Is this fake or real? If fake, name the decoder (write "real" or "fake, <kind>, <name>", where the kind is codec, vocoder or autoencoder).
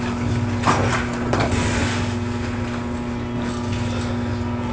real